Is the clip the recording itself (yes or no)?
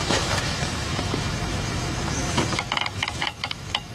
no